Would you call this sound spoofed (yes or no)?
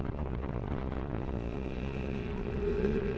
yes